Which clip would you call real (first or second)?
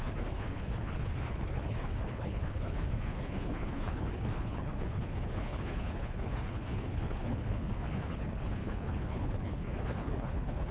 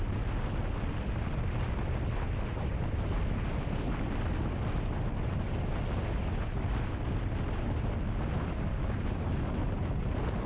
second